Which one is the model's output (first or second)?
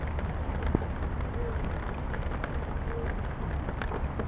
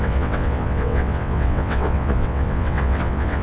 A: second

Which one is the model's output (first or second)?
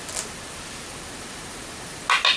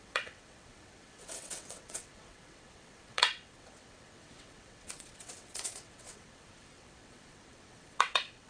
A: second